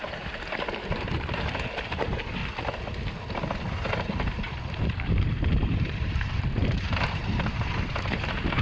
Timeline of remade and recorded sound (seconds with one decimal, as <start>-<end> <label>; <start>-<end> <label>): 0.0-2.4 remade; 2.4-4.8 recorded; 4.8-8.6 remade